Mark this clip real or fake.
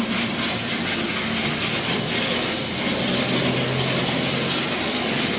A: real